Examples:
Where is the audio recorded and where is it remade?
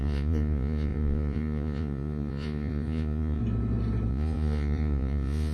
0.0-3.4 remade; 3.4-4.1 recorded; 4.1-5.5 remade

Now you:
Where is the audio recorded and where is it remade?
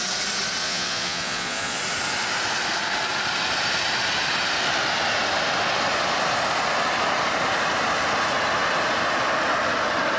0.0-0.6 recorded; 0.6-1.8 remade; 1.8-10.2 recorded